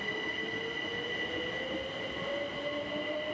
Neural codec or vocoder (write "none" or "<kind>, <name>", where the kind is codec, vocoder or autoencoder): none